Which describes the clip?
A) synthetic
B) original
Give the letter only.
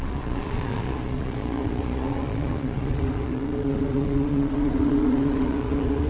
A